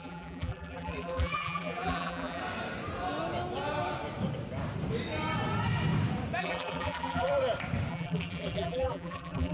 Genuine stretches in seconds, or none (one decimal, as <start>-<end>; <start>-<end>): 2.4-6.4; 7.3-7.9